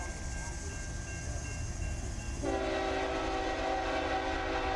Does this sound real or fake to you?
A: real